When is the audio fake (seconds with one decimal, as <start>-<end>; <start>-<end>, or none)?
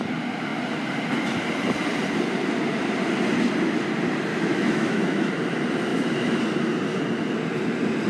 4.3-5.3; 5.9-6.4